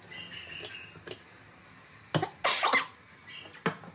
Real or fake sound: real